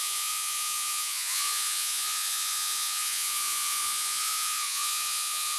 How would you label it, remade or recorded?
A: remade